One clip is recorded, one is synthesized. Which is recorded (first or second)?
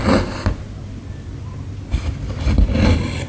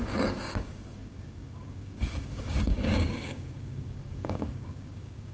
first